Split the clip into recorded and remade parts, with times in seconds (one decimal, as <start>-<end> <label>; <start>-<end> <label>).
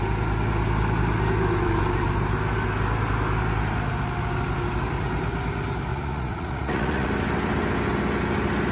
0.0-5.9 recorded; 5.9-7.1 remade; 7.1-8.7 recorded